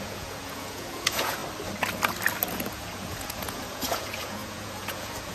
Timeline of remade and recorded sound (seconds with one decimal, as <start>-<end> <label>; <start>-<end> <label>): 0.0-1.4 remade; 1.4-2.5 recorded; 2.5-5.3 remade